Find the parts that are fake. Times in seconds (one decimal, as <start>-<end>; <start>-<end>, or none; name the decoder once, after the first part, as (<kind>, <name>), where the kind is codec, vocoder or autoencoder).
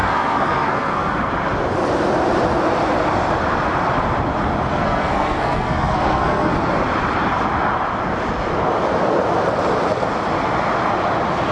0.0-1.3 (codec, SNAC); 4.7-6.5